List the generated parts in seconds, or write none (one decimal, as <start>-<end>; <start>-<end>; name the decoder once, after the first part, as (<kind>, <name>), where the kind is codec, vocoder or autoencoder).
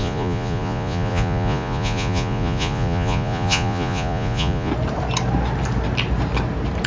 0.0-4.7 (vocoder, Vocos)